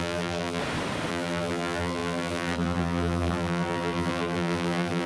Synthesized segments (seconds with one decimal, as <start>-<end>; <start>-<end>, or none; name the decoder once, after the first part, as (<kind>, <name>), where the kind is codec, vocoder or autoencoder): 0.0-0.6 (vocoder, BigVGAN v2); 1.1-5.1